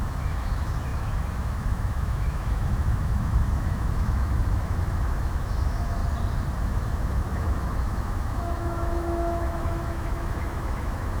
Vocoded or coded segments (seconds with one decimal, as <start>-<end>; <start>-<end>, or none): 0.0-6.0; 6.6-11.2